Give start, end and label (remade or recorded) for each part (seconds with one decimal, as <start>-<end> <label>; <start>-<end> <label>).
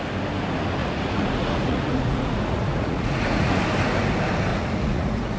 0.0-0.8 recorded; 0.8-3.6 remade; 3.6-4.5 recorded; 4.5-5.4 remade